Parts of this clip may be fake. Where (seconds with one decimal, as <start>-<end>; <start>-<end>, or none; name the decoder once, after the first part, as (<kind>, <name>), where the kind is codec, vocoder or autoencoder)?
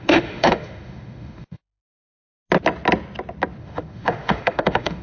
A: 0.0-1.8 (autoencoder, DAC-VAE); 3.6-5.0